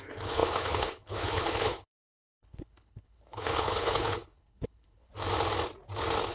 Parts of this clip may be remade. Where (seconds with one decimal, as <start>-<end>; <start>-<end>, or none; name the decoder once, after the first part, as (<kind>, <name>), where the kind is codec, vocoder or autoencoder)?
0.0-5.1 (codec, HILCodec)